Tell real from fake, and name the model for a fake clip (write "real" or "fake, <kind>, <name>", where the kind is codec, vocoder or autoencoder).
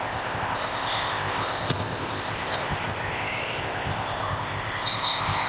fake, codec, ZipCodec